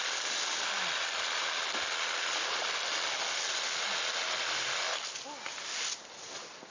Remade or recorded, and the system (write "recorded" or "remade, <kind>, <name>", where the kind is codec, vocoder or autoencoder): recorded